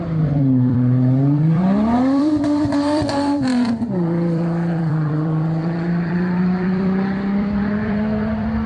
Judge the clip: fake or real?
fake